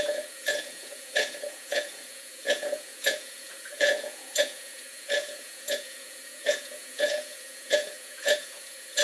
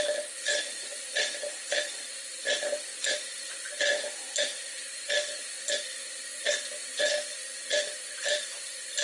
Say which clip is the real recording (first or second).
second